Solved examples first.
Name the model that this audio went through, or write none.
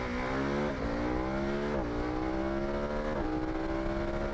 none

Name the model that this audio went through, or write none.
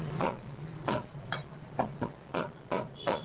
vocoder, Vocos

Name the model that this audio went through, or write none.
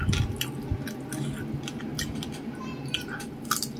none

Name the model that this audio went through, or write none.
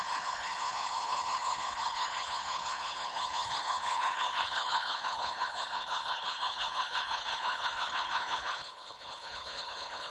codec, HILCodec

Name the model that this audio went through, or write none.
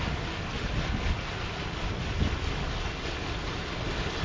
none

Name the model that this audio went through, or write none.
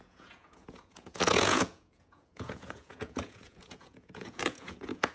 vocoder, Vocos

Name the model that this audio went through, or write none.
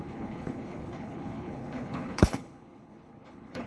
codec, HILCodec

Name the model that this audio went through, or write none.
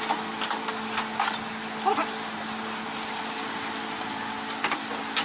none